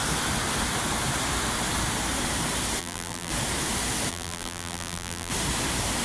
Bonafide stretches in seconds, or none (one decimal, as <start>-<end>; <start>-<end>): 0.0-2.8; 3.3-4.1; 5.3-6.0